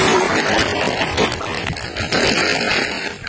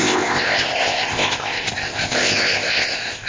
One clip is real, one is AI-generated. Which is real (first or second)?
first